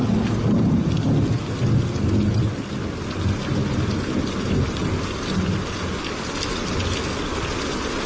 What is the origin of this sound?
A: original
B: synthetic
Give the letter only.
A